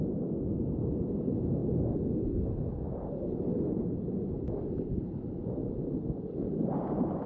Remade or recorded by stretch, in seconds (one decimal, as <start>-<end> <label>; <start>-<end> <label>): 0.0-7.3 recorded